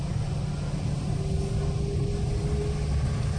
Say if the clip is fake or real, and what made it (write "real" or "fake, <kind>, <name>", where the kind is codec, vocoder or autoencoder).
real